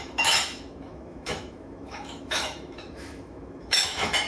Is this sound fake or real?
fake